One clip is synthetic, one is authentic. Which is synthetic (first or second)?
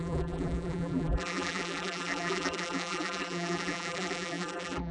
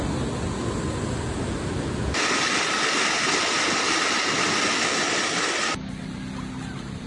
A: first